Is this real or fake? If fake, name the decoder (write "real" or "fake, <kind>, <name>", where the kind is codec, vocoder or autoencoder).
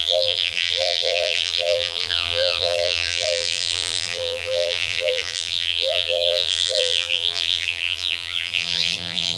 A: fake, vocoder, BigVGAN v2